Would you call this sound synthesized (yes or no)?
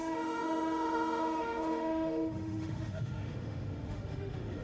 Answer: yes